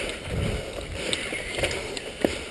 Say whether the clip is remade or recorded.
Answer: recorded